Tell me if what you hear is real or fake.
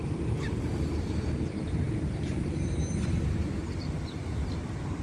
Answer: real